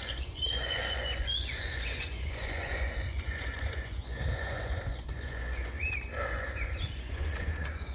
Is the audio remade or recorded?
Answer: remade